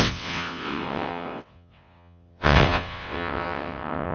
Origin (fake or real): fake